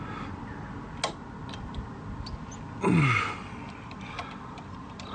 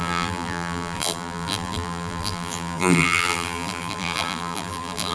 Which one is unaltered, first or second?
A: first